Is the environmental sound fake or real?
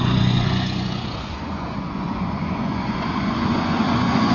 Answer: fake